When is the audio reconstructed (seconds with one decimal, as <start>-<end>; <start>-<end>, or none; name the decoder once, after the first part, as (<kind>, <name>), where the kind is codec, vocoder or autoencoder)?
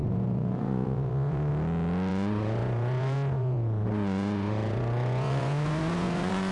0.0-1.5 (vocoder, Vocos); 2.1-6.5